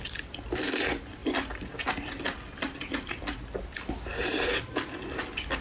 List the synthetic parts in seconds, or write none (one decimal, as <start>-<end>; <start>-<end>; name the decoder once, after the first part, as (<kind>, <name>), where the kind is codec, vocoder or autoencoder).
none